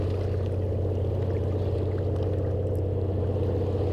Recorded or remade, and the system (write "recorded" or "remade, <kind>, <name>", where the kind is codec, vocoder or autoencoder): recorded